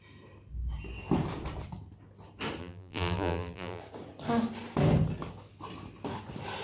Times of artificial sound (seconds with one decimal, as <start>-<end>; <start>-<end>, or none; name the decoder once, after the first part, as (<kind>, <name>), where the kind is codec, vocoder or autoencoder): 2.6-3.8 (vocoder, BigVGAN v2)